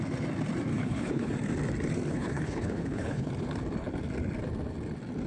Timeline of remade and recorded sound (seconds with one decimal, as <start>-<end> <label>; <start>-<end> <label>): 0.0-0.7 recorded; 0.7-1.3 remade; 1.3-2.1 recorded; 2.1-3.3 remade; 3.3-5.3 recorded